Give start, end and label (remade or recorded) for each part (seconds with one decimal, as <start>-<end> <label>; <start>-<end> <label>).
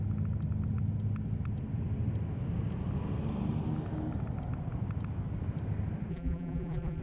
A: 0.0-6.1 recorded; 6.1-7.0 remade